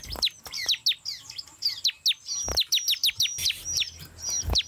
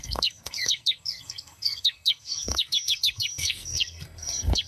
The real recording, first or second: first